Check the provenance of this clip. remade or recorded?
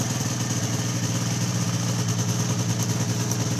recorded